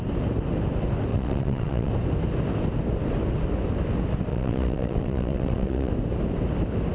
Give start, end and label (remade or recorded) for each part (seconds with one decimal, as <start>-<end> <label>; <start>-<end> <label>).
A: 0.0-1.1 recorded; 1.1-1.9 remade; 1.9-4.3 recorded; 4.3-5.9 remade; 5.9-6.9 recorded